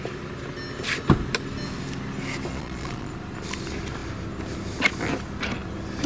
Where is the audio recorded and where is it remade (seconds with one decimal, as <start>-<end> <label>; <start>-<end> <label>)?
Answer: 0.0-2.5 recorded; 2.5-3.1 remade; 3.1-6.1 recorded